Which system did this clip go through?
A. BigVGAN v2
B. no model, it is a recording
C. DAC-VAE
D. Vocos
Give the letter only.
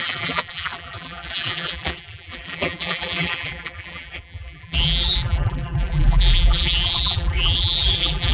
A